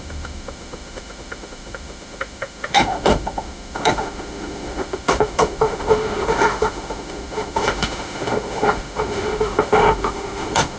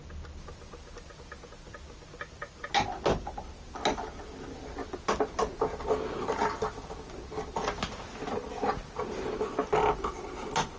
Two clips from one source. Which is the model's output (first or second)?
first